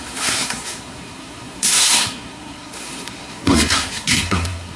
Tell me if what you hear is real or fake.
fake